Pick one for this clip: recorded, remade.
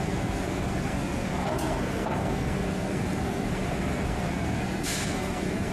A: remade